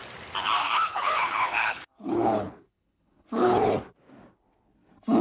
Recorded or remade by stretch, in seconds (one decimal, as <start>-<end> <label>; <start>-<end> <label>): 0.0-0.6 recorded; 0.6-3.7 remade; 3.7-5.2 recorded